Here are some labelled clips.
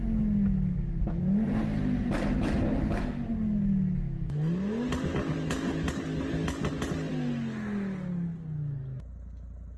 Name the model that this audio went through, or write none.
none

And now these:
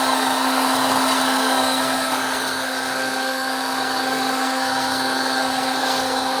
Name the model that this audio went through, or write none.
codec, SNAC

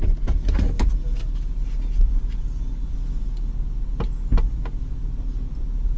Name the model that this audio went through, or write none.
none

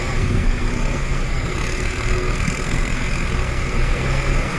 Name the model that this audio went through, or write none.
codec, SNAC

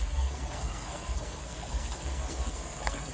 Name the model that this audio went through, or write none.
codec, SNAC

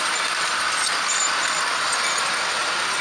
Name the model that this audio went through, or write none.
none